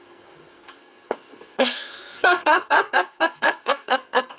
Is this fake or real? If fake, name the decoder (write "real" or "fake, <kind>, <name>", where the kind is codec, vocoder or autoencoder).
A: fake, codec, SNAC